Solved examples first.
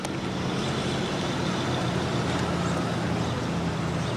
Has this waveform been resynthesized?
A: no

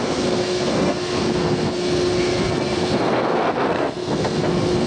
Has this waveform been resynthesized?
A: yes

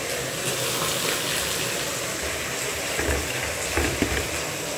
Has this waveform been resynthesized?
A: no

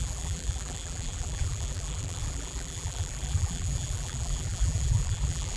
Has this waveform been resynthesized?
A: yes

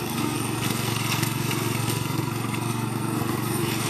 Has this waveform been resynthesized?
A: yes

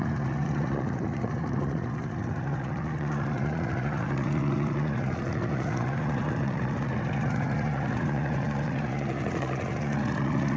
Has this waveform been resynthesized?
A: yes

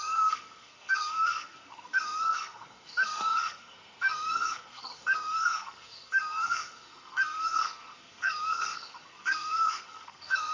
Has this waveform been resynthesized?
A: yes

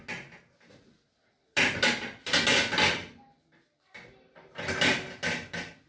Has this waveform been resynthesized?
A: no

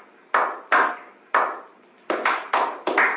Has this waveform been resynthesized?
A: no